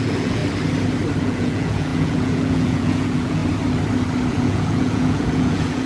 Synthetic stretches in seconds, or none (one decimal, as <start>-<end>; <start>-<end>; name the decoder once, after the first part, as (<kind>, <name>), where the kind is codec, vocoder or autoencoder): 0.0-0.4 (vocoder, Vocos); 1.2-3.4; 4.3-5.9